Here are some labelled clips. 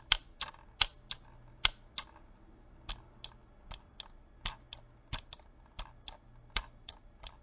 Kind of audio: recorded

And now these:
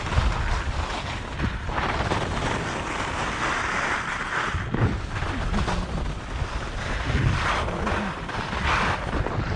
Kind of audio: recorded